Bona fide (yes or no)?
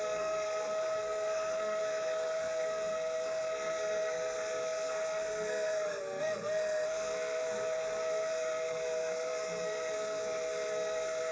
no